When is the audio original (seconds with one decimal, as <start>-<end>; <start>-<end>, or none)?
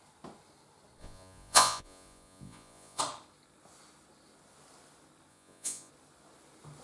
0.0-1.0; 3.0-5.3; 5.9-6.8